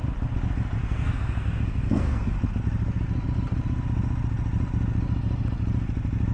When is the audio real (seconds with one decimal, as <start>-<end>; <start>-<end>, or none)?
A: 0.0-0.8; 2.3-6.3